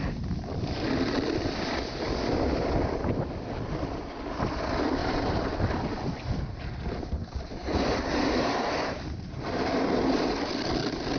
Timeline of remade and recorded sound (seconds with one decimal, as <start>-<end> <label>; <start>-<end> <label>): 0.0-5.0 recorded; 5.0-5.5 remade; 5.5-11.2 recorded